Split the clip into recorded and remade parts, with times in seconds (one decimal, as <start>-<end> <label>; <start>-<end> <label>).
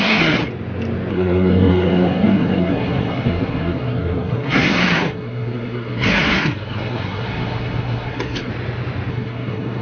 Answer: 0.0-0.4 remade; 0.4-1.1 recorded; 1.1-8.5 remade; 8.5-9.1 recorded; 9.1-9.8 remade